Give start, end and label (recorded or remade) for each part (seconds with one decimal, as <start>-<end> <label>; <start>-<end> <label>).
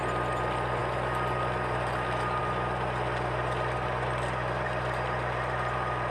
0.0-6.1 recorded